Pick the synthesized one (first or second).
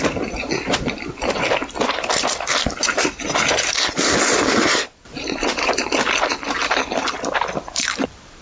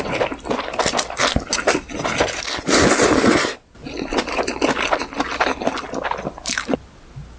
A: first